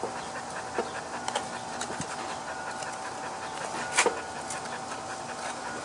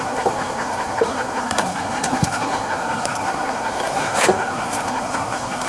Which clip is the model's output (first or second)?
second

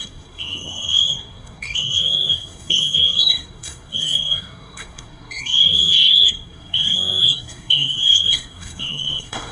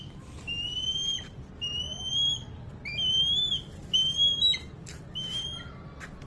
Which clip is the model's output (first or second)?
first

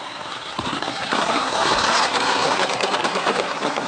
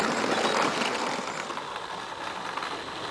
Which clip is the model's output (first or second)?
first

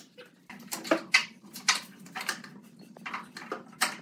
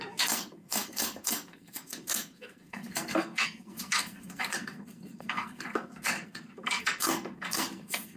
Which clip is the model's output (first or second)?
second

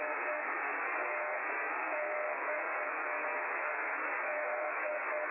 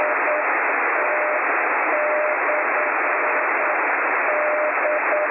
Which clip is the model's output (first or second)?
first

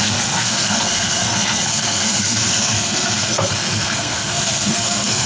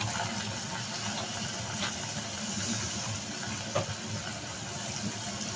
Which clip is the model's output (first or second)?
first